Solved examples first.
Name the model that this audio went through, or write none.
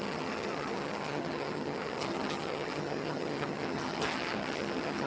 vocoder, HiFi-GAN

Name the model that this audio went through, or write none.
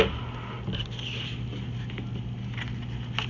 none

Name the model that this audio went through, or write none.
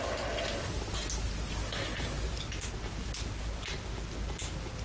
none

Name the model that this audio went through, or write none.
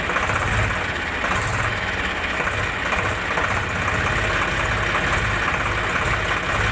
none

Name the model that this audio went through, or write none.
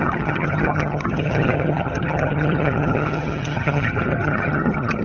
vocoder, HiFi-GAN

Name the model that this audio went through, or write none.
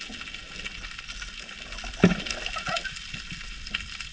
none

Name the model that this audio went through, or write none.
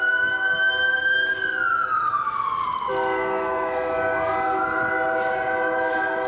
none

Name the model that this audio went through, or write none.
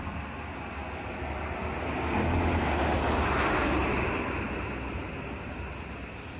none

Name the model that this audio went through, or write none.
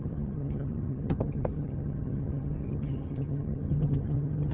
vocoder, HiFi-GAN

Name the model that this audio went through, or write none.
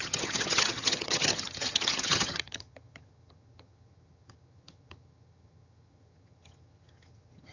vocoder, HiFi-GAN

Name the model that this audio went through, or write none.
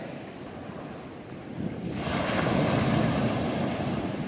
none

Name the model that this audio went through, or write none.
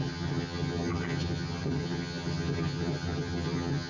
vocoder, HiFi-GAN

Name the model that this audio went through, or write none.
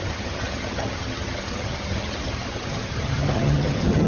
vocoder, HiFi-GAN